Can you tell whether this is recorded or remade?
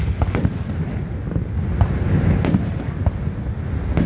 recorded